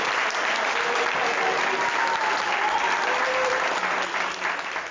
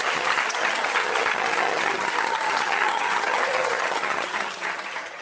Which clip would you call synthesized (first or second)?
second